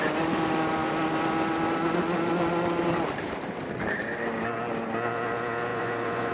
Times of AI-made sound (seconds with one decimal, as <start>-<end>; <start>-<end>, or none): 5.7-6.3